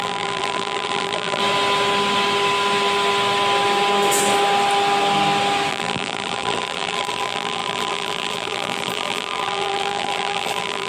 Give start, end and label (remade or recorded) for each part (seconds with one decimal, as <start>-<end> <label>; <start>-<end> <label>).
0.0-1.4 remade; 1.4-5.7 recorded; 5.7-10.9 remade